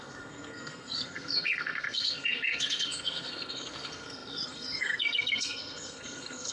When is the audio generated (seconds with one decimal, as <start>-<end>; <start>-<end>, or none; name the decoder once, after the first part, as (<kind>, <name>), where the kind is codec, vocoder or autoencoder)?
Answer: 0.0-6.5 (codec, SNAC)